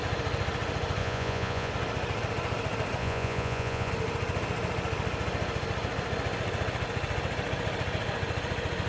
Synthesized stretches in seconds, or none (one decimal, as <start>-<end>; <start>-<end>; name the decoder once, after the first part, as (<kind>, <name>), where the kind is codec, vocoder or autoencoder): 1.0-1.7 (vocoder, Vocos); 3.0-3.9